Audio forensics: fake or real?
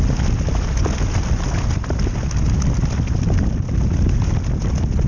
real